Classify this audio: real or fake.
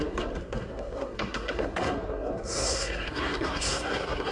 fake